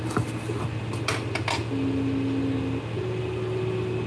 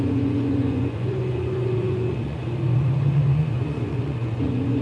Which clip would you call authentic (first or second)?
first